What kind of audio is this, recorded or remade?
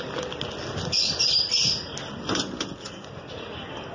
recorded